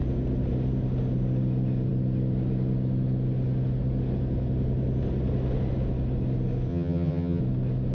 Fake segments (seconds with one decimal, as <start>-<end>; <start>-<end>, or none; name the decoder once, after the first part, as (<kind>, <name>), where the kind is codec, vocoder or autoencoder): 6.7-7.4 (vocoder, HiFi-GAN)

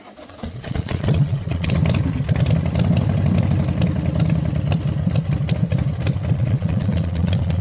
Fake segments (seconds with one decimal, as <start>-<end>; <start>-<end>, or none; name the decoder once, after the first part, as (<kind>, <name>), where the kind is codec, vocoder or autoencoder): 0.0-1.8 (vocoder, Vocos); 6.3-7.6

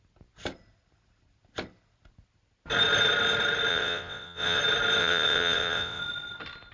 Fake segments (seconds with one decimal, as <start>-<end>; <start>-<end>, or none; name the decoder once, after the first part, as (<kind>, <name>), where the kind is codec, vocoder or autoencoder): 3.7-4.6 (vocoder, WaveNeXt); 5.0-6.0

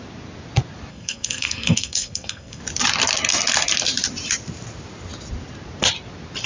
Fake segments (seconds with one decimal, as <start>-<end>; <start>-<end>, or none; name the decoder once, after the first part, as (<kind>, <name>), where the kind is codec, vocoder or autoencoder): 0.9-2.6 (codec, SNAC)

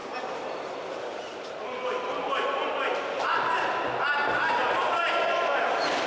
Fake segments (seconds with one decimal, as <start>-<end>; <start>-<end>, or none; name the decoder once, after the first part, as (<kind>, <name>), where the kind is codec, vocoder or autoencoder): none